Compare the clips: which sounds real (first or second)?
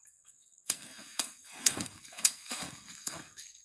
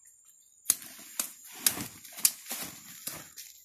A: second